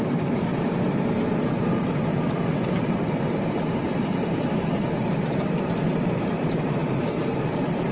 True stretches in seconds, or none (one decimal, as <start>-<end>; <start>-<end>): 0.5-3.6

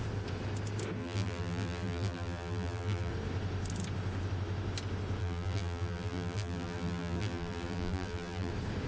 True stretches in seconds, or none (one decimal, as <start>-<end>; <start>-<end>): 0.0-1.0; 3.1-5.2; 8.5-8.9

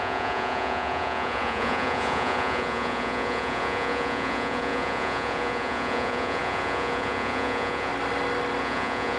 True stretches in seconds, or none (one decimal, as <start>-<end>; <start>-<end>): 7.9-8.6

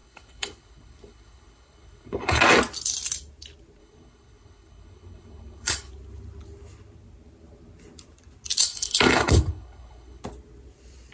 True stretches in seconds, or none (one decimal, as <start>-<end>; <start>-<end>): 2.4-3.8; 5.9-8.6; 10.2-11.1